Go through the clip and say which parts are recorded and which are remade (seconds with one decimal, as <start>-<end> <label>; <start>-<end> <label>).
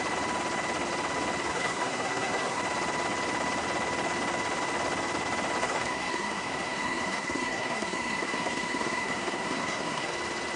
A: 0.0-1.5 recorded; 1.5-2.6 remade; 2.6-5.6 recorded; 5.6-10.1 remade; 10.1-10.6 recorded